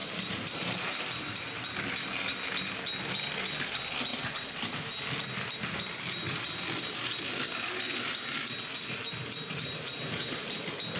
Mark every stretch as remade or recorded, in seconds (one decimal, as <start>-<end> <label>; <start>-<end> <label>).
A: 0.0-1.0 remade; 1.0-4.1 recorded; 4.1-4.9 remade; 4.9-11.0 recorded